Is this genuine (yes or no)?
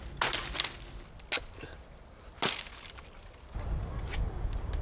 yes